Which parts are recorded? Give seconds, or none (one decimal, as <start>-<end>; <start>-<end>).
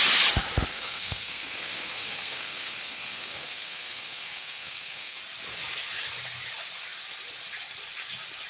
0.0-0.7; 5.2-8.5